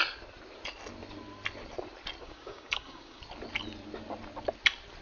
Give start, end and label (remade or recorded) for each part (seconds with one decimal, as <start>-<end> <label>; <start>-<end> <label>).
0.0-2.2 recorded; 2.2-3.2 remade; 3.2-5.0 recorded